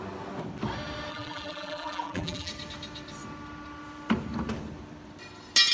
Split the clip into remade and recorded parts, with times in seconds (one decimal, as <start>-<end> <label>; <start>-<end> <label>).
0.0-1.1 recorded; 1.1-2.5 remade; 2.5-5.7 recorded